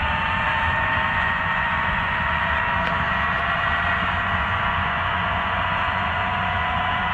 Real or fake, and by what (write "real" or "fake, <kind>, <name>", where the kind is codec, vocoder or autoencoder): fake, vocoder, Vocos